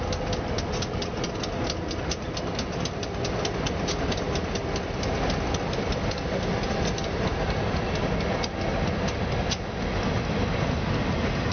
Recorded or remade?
recorded